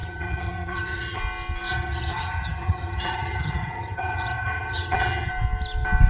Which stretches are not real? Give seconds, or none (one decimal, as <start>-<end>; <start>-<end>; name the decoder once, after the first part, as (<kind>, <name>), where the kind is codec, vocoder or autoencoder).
0.0-1.2 (vocoder, HiFi-GAN); 1.7-5.3

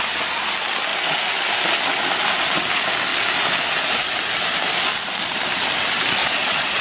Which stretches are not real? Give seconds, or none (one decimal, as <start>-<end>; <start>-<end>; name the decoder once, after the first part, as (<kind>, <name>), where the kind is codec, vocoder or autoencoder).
6.2-6.8 (vocoder, Vocos)

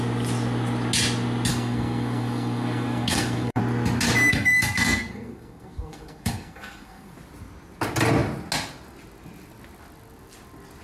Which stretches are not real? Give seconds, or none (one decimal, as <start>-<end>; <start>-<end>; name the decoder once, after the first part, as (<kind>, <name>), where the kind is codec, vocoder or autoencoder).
1.5-3.6 (codec, SNAC); 4.3-7.1

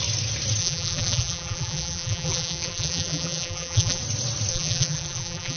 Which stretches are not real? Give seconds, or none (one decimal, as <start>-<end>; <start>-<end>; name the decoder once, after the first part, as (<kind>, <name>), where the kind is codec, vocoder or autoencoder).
0.6-4.0 (vocoder, BigVGAN v2); 4.5-5.6